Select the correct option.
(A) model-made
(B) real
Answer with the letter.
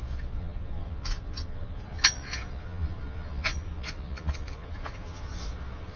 A